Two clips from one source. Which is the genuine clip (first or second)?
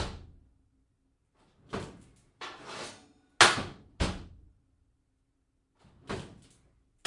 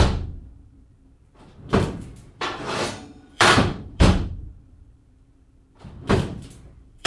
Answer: first